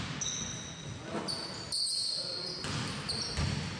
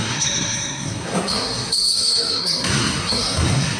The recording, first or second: first